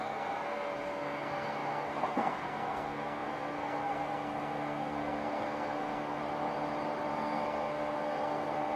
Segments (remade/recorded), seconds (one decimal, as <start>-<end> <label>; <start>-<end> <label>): 0.0-6.2 remade; 6.2-7.1 recorded; 7.1-8.8 remade